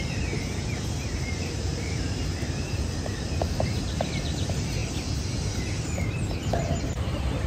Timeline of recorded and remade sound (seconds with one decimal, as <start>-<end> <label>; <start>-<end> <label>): 0.0-4.8 remade; 4.8-6.8 recorded; 6.8-7.5 remade